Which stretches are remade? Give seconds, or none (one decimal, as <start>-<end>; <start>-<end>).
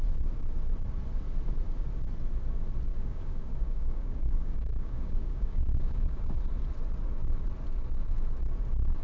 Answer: 2.9-6.4